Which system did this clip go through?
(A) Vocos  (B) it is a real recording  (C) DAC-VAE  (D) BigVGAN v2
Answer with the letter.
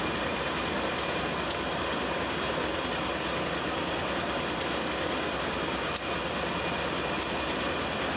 B